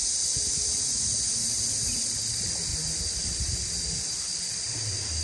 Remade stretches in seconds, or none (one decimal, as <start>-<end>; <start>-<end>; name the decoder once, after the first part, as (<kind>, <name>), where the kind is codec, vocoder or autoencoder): 2.0-2.7 (vocoder, BigVGAN v2); 4.0-5.2